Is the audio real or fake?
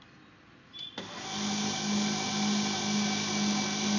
real